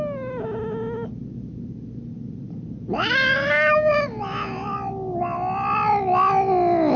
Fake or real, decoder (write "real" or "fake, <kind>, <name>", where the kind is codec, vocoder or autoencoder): real